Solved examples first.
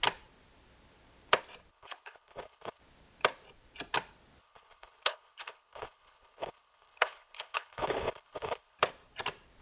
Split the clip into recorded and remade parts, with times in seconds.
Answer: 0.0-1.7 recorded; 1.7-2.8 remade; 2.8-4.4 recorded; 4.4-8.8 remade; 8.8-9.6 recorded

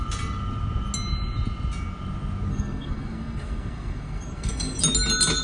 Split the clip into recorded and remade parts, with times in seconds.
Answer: 0.0-2.5 recorded; 2.5-4.8 remade; 4.8-5.4 recorded

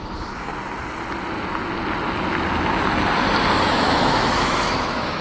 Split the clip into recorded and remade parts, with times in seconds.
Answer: 0.0-0.5 remade; 0.5-3.6 recorded; 3.6-5.2 remade

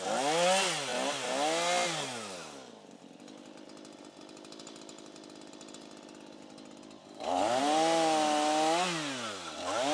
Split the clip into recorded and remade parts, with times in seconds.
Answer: 0.0-7.0 recorded; 7.0-7.6 remade; 7.6-9.9 recorded